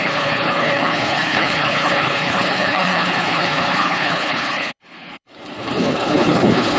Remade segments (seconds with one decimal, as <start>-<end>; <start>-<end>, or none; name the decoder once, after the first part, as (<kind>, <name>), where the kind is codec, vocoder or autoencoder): 0.0-6.8 (codec, HILCodec)